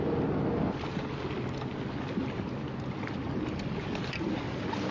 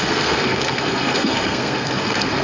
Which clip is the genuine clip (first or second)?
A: first